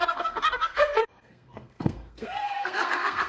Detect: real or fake fake